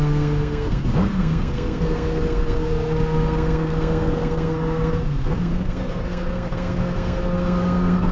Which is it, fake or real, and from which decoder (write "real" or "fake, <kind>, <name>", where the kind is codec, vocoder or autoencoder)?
fake, codec, SNAC